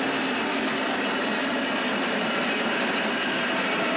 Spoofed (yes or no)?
no